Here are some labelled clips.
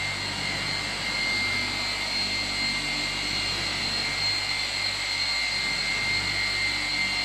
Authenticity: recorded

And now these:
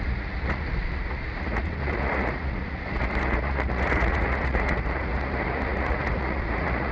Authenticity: remade